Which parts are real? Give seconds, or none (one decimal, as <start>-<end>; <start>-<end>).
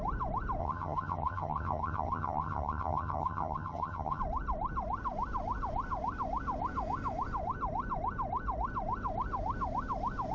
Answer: 0.0-0.6; 4.2-10.3